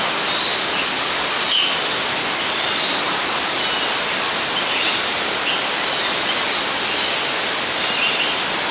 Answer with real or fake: real